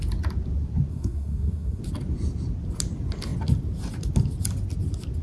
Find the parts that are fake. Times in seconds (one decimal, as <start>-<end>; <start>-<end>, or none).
0.9-1.8